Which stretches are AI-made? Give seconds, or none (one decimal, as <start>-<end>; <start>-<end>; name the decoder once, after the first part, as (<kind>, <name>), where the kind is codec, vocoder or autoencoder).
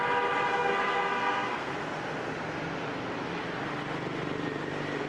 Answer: 0.5-1.7 (codec, SNAC)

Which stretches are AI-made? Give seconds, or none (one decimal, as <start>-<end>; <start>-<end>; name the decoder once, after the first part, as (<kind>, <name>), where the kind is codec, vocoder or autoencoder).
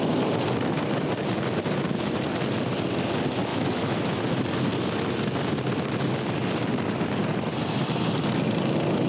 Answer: 3.5-4.4 (autoencoder, DAC-VAE)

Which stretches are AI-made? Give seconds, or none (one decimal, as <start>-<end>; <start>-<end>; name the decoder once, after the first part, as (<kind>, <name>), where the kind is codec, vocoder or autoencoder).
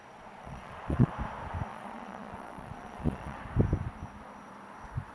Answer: 0.0-1.1 (vocoder, Vocos); 1.7-3.4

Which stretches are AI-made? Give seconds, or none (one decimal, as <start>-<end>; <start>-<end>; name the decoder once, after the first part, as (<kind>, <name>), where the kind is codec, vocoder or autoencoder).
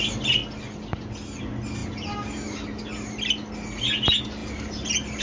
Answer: none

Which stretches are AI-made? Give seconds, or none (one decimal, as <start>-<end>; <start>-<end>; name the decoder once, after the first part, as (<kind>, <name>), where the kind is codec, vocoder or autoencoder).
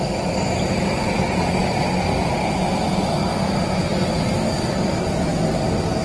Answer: none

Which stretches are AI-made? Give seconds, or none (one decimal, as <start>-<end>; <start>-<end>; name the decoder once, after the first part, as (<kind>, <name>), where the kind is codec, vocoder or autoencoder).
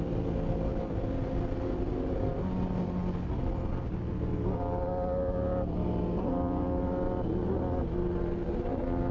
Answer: none